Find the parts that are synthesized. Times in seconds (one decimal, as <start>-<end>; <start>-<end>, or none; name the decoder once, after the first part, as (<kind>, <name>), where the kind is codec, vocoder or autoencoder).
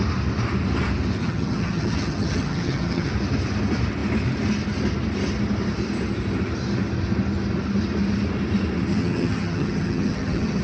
1.2-3.1 (vocoder, HiFi-GAN); 8.9-10.6